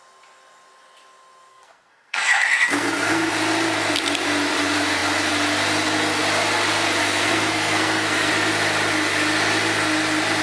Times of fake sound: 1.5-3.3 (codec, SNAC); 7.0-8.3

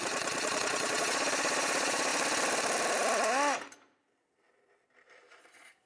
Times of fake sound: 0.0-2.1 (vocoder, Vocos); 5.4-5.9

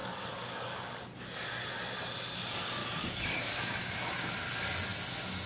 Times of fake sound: 0.0-1.0 (codec, DAC); 2.8-3.9